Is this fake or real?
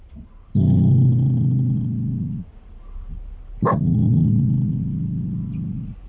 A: real